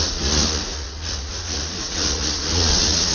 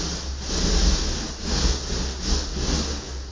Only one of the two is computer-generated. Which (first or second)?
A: first